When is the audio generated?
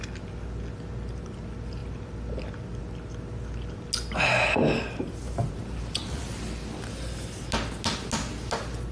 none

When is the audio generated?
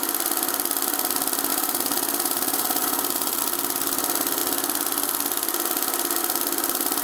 1.5-3.4 (vocoder, BigVGAN v2)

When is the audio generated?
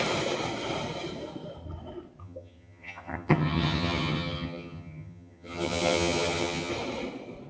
2.2-6.7 (vocoder, HiFi-GAN)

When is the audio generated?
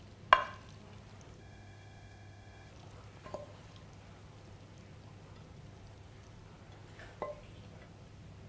1.4-2.7 (autoencoder, DAC-VAE)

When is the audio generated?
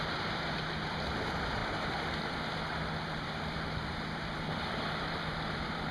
0.0-5.9 (vocoder, BigVGAN v2)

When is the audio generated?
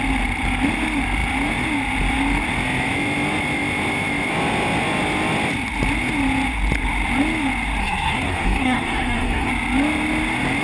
7.8-9.5 (codec, SNAC)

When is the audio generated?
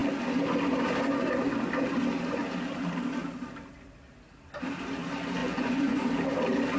5.4-6.0 (vocoder, Vocos)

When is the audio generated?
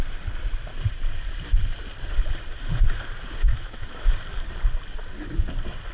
3.5-4.1 (autoencoder, DAC-VAE)